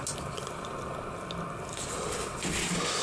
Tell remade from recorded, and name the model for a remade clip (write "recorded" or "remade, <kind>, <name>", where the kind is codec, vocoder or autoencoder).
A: recorded